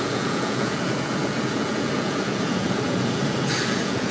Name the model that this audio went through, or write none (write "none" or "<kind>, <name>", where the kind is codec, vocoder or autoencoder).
vocoder, Vocos